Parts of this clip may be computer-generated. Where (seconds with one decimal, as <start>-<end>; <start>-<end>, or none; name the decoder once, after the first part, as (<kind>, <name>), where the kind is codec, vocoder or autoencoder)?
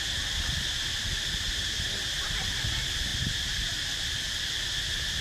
none